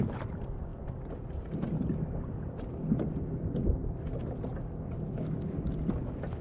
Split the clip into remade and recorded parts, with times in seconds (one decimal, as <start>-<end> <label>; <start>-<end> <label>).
0.0-6.4 recorded